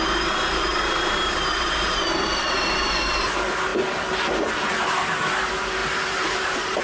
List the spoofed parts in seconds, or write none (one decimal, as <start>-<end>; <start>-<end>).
0.7-2.0; 5.8-6.8